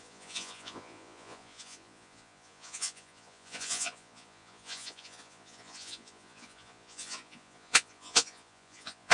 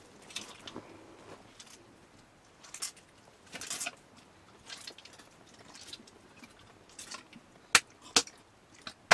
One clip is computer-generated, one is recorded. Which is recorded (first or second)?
second